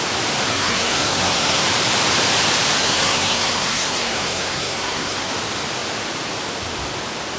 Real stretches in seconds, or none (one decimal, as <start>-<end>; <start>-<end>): 0.0-0.5; 1.6-2.8; 5.3-7.4